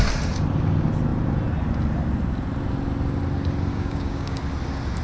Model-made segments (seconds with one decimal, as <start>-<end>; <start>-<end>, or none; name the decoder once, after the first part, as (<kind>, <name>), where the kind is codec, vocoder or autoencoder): 3.7-4.4 (codec, DAC)